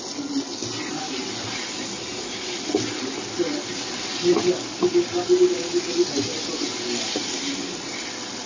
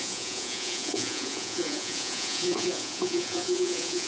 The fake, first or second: second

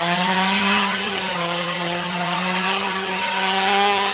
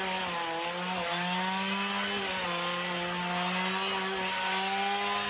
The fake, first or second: first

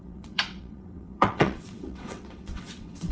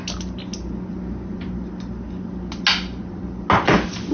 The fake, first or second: first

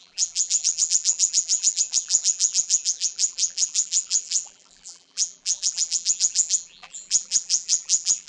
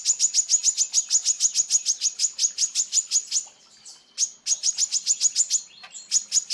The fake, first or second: first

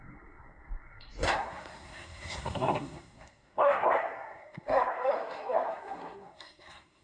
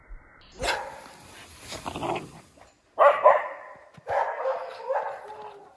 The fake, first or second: first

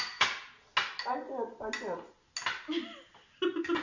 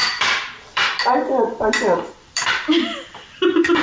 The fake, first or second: second